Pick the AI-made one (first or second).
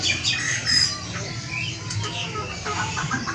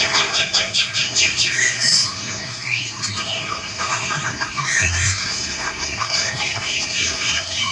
second